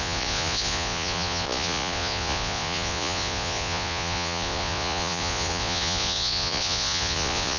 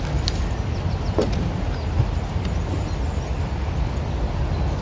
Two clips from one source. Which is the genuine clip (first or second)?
second